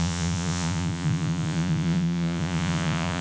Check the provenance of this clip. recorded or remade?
remade